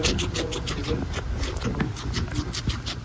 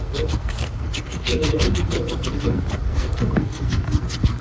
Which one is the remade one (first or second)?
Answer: second